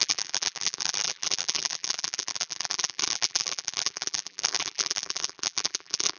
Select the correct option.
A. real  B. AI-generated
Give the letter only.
B